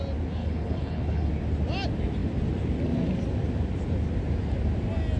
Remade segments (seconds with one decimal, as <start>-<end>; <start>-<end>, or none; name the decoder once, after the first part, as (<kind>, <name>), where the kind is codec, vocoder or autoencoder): 0.4-1.3 (codec, HILCodec)